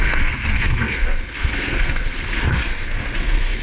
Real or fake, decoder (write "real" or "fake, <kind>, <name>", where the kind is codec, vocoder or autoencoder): fake, codec, SNAC